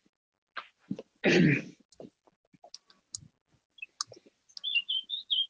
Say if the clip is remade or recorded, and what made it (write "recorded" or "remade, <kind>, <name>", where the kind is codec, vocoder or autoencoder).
recorded